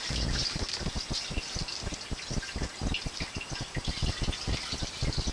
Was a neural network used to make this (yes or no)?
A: no